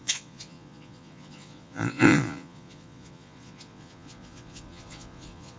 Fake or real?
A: fake